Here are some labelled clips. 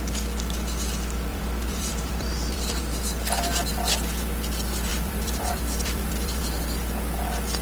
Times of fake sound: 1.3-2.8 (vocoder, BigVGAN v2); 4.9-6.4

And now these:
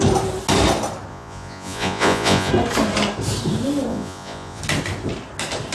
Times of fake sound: 1.1-2.5 (vocoder, Vocos); 3.9-4.6